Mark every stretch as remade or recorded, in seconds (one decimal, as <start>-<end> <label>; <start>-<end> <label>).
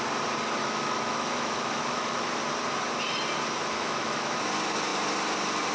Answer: 0.0-0.6 recorded; 0.6-2.4 remade; 2.4-3.6 recorded; 3.6-4.4 remade; 4.4-5.7 recorded